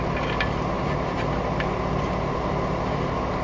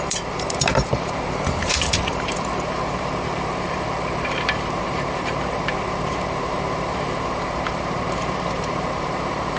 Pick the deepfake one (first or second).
second